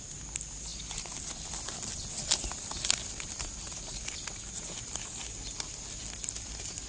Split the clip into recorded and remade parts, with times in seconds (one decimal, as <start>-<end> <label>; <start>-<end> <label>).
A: 0.0-6.9 recorded